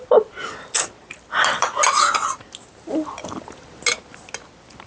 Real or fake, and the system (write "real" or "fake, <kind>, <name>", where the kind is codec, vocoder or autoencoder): real